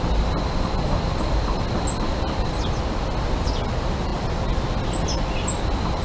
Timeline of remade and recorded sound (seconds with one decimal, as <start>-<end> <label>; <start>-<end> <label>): 0.0-6.0 recorded

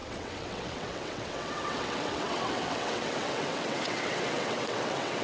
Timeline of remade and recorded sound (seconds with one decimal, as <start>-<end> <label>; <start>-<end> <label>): 0.0-5.2 remade

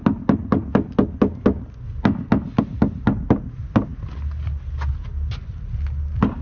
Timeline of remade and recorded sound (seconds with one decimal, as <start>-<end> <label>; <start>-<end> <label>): 0.0-6.4 recorded